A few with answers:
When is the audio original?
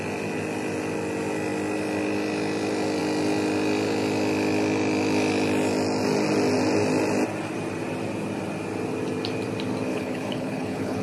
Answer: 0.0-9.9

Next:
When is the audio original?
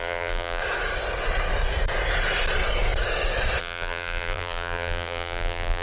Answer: 0.6-3.6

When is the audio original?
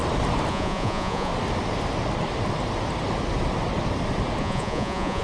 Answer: 0.0-0.5; 1.3-4.4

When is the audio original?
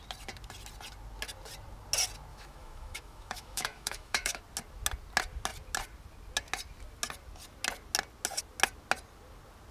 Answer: 0.0-2.3; 4.4-9.7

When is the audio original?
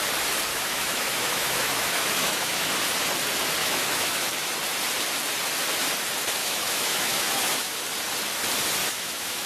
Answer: 0.0-0.5; 2.7-3.6; 4.3-6.4; 7.8-8.8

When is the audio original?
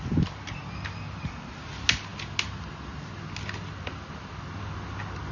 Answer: 0.0-5.3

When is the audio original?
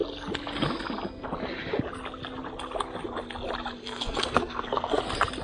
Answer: 0.0-3.8; 5.0-5.4